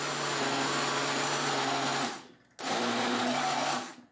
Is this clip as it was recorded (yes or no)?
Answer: yes